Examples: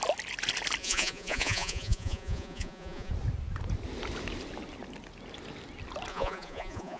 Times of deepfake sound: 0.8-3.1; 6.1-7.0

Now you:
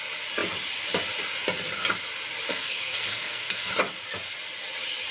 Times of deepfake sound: 2.5-3.7